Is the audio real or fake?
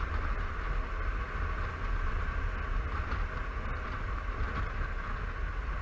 real